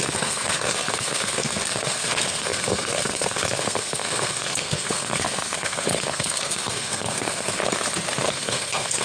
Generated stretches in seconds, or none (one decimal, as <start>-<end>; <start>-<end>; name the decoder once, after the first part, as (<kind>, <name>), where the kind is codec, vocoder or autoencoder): 0.0-7.6 (codec, SNAC); 8.3-9.0